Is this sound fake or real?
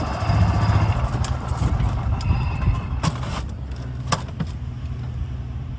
real